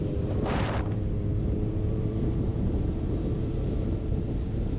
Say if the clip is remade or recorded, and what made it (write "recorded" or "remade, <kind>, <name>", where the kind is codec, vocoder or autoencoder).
remade, vocoder, BigVGAN v2